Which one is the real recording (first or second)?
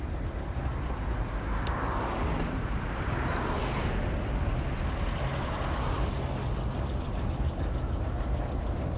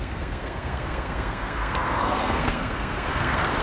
first